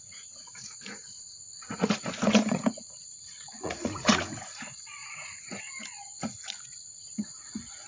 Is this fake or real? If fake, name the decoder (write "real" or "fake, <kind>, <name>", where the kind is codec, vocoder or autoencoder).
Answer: fake, vocoder, Vocos